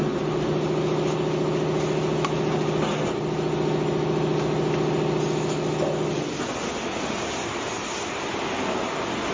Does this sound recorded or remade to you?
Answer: recorded